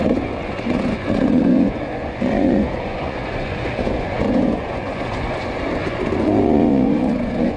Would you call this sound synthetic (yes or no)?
yes